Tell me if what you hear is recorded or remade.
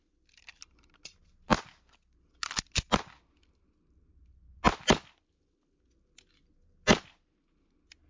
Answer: recorded